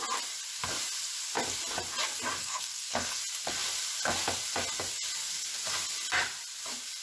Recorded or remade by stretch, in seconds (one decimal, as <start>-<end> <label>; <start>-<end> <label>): 0.0-2.4 recorded; 2.4-3.2 remade; 3.2-7.0 recorded